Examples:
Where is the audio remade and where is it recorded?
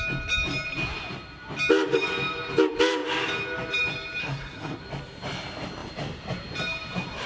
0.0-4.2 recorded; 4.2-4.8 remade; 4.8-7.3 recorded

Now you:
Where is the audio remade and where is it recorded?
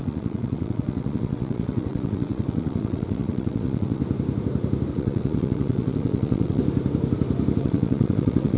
0.0-4.0 remade; 4.0-4.9 recorded; 4.9-6.6 remade; 6.6-7.6 recorded; 7.6-8.6 remade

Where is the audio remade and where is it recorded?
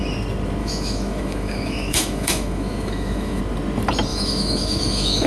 0.0-0.6 recorded; 0.6-3.4 remade; 3.4-4.1 recorded; 4.1-5.3 remade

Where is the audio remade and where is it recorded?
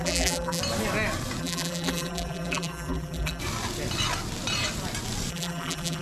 0.0-0.6 remade; 0.6-1.4 recorded; 1.4-3.4 remade; 3.4-5.3 recorded; 5.3-6.0 remade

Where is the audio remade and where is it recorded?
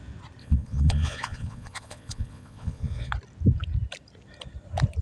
0.0-0.4 recorded; 0.4-3.1 remade; 3.1-5.0 recorded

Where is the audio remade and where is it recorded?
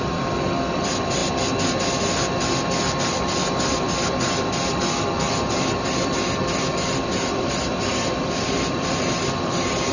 0.0-1.2 remade; 1.2-3.0 recorded; 3.0-9.9 remade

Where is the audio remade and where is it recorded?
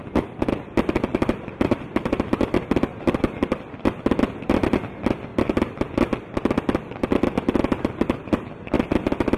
0.0-1.1 recorded; 1.1-2.3 remade; 2.3-9.4 recorded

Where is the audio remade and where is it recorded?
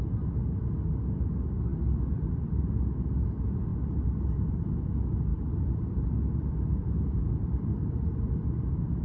0.0-1.7 recorded; 1.7-2.5 remade; 2.5-3.7 recorded; 3.7-4.5 remade; 4.5-5.3 recorded; 5.3-9.0 remade